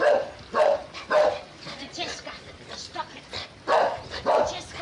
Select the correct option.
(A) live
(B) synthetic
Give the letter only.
A